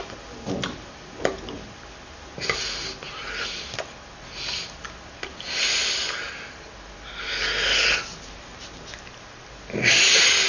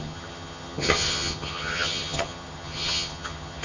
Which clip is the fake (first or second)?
second